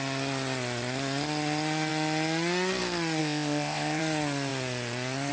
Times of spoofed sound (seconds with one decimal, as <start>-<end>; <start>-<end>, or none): 3.2-4.0